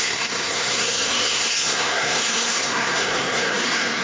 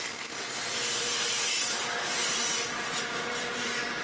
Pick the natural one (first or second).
second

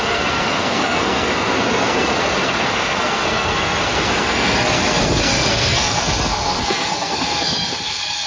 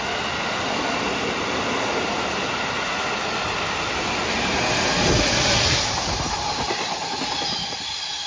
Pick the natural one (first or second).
second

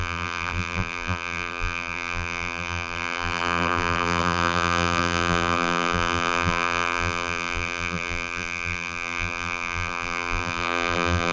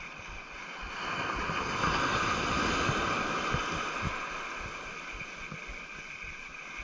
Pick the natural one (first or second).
second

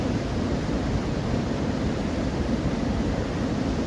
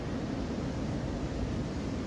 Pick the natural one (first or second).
second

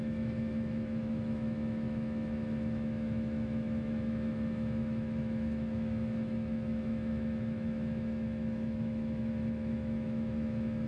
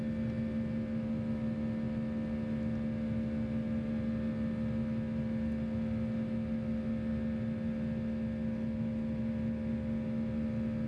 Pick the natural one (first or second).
second